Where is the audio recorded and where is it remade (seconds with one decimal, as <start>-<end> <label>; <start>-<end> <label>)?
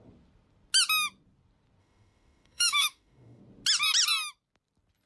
0.0-1.8 recorded; 1.8-3.4 remade; 3.4-5.1 recorded